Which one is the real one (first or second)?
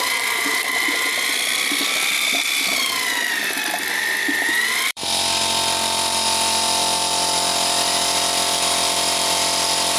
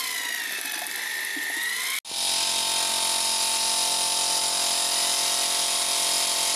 second